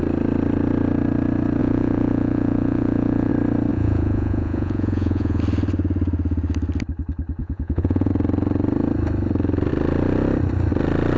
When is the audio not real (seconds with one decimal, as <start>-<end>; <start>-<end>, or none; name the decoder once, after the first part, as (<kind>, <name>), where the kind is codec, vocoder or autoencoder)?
1.6-3.3 (vocoder, Vocos); 3.7-5.4; 7.4-8.1